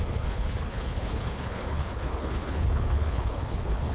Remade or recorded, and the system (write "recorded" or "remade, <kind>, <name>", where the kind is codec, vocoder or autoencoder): remade, codec, HILCodec